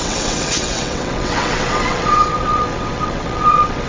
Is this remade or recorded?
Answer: remade